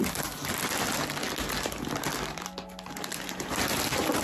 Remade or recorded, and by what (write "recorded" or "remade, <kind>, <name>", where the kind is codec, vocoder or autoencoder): recorded